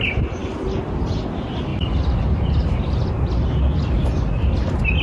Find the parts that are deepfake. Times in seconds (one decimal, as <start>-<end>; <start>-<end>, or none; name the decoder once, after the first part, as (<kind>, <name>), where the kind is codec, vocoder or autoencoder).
1.7-3.1 (vocoder, BigVGAN v2)